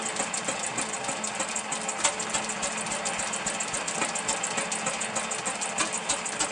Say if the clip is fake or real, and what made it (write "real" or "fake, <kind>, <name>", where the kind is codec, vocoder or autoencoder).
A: real